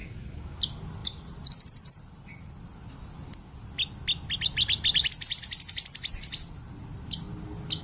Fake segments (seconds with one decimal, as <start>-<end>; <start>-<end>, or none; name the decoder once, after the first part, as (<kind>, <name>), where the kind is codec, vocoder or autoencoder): 0.0-0.6 (codec, DAC)